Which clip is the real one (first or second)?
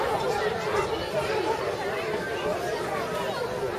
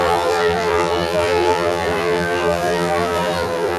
first